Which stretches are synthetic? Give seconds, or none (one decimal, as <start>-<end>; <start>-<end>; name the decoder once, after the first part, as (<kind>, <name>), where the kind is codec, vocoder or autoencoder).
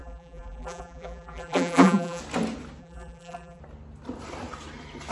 0.0-2.2 (vocoder, BigVGAN v2); 2.8-3.6